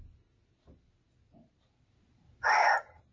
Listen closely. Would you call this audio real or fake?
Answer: real